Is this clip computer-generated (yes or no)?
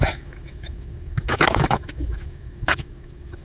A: yes